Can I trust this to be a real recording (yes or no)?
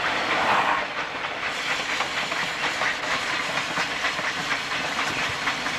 yes